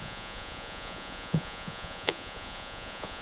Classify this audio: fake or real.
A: fake